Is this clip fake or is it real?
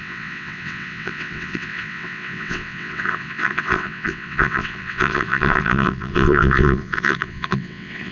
fake